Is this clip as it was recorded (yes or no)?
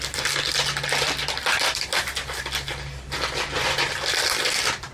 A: no